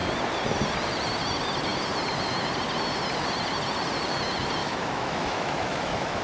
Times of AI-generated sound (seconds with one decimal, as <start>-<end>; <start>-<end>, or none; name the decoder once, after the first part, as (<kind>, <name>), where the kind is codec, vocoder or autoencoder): 4.6-6.2 (autoencoder, DAC-VAE)